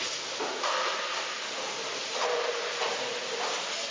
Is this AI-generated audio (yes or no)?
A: no